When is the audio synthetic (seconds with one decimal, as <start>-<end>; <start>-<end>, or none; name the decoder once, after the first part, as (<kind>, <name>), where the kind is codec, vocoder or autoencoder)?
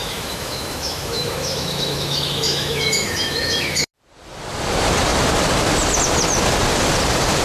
0.0-3.9 (autoencoder, DAC-VAE)